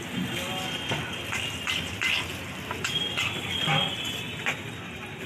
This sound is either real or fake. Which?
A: real